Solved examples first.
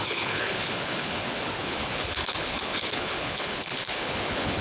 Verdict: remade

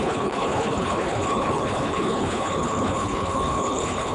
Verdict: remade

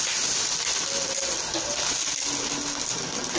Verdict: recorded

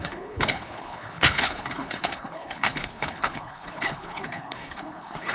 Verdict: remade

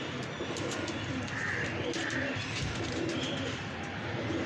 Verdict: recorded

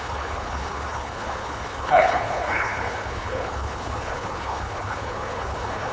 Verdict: remade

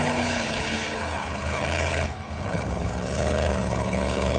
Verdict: remade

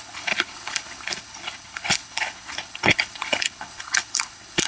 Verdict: remade